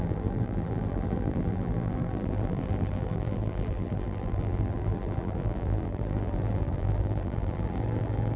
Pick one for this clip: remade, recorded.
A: remade